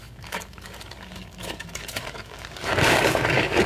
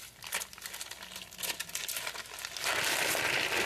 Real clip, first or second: second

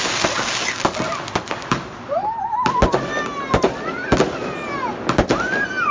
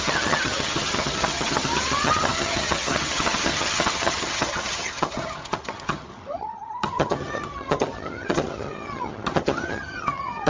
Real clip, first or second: first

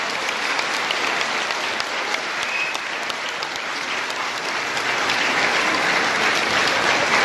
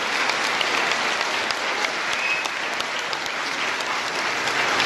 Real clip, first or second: second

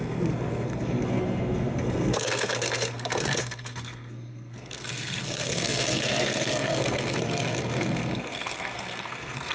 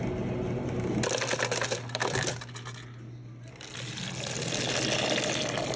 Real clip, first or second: second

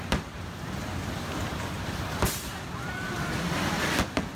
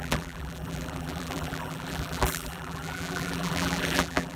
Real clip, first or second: first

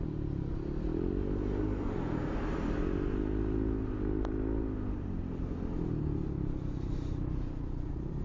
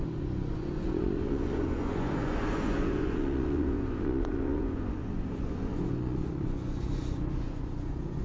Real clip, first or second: first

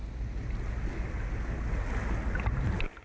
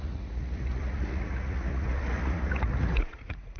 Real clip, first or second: first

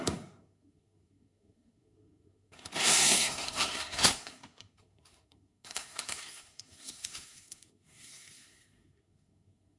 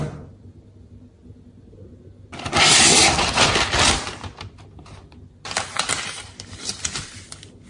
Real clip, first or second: second